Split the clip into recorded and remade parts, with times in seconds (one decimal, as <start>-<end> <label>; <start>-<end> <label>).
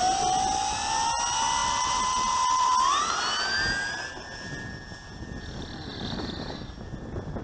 0.0-1.6 recorded; 1.6-3.1 remade; 3.1-7.4 recorded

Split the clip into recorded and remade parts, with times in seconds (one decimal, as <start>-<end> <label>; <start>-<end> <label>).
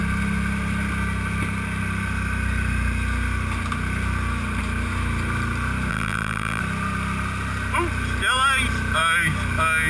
0.0-5.9 recorded; 5.9-6.6 remade; 6.6-9.9 recorded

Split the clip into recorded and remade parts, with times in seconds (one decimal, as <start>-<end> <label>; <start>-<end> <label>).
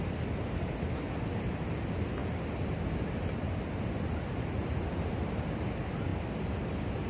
0.0-7.1 recorded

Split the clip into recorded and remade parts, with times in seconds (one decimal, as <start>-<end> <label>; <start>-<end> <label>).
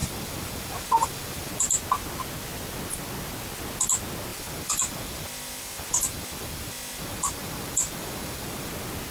0.0-1.5 remade; 1.5-4.3 recorded; 4.3-8.7 remade; 8.7-9.1 recorded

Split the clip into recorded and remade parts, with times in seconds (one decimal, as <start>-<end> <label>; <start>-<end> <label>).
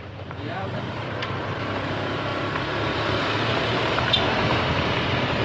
0.0-5.4 remade